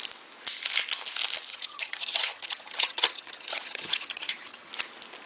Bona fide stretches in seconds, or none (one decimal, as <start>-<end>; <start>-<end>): 0.0-1.5; 4.7-5.3